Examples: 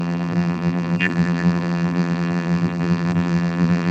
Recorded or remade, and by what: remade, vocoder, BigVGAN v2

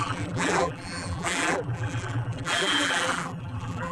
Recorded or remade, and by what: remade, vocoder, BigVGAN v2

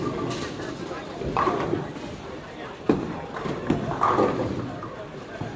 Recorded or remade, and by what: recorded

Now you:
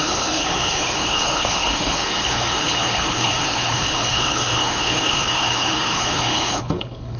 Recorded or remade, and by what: remade, codec, HILCodec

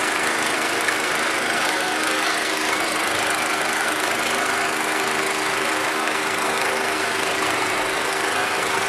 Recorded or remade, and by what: remade, codec, SNAC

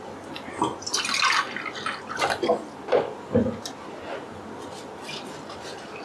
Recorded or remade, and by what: recorded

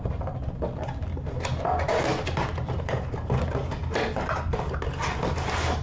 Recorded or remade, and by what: recorded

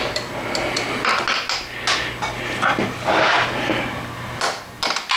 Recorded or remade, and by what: recorded